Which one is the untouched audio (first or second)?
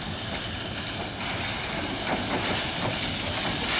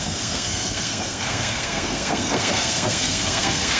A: first